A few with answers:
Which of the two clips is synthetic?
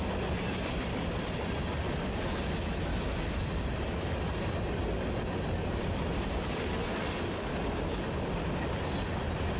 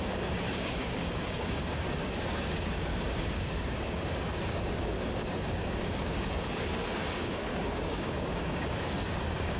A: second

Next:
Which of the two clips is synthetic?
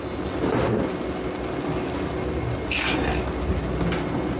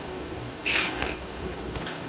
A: second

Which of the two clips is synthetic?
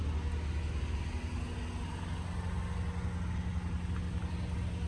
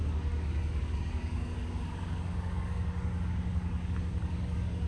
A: second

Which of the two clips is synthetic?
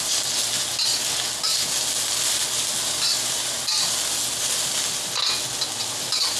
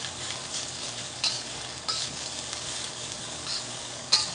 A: second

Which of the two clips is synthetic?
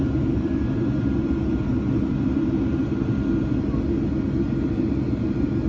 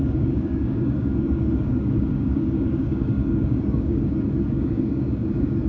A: second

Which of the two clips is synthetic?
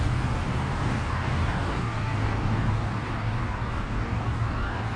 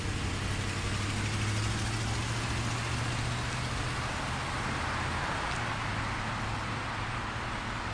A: first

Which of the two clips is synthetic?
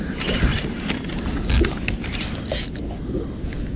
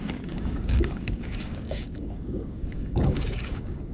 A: second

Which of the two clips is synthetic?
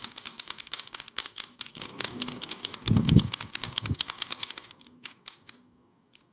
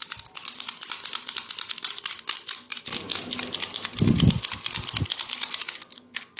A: first